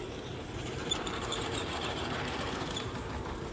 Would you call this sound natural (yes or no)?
no